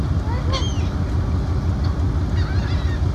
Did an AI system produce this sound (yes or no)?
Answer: no